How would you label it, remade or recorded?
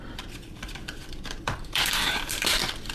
remade